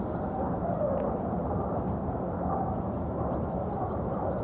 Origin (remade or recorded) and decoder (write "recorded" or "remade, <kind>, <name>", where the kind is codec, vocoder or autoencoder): remade, vocoder, BigVGAN v2